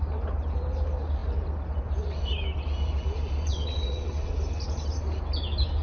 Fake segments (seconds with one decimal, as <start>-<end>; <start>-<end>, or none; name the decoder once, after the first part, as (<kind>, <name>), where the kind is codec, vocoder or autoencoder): 3.5-4.3 (vocoder, WaveNeXt)